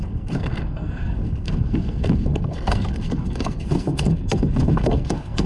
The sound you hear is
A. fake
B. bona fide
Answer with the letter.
A